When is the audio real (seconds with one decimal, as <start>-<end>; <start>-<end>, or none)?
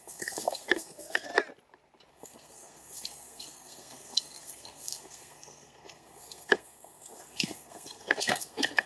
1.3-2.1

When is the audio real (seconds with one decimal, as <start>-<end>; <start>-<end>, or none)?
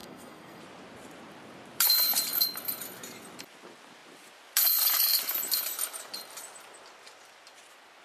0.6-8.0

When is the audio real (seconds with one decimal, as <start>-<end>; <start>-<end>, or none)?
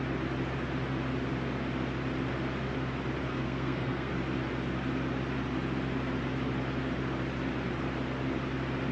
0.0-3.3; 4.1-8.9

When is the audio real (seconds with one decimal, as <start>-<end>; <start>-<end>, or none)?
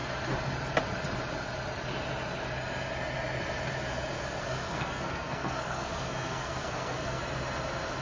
0.0-4.4; 7.2-8.0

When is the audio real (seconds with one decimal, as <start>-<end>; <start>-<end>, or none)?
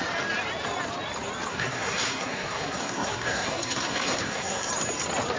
0.0-1.5; 4.7-5.4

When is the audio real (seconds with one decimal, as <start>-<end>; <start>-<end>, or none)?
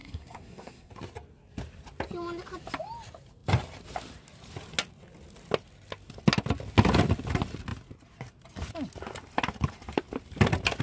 0.9-10.8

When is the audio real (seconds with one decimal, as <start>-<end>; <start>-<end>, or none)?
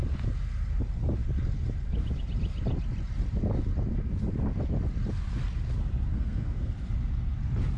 0.0-6.1; 6.7-7.8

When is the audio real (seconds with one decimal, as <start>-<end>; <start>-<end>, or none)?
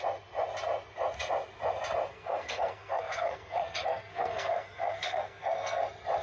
0.0-2.1; 5.8-6.2